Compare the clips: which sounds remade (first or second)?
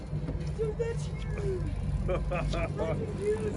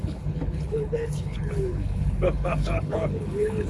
second